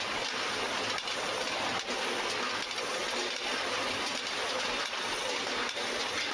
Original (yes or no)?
yes